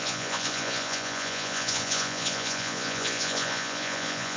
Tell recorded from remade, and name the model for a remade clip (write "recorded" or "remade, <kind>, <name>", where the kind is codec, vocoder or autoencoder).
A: remade, vocoder, Vocos